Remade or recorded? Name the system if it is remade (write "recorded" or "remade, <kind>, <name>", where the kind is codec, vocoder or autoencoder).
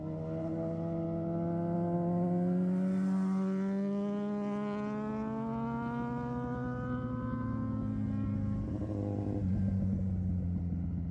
recorded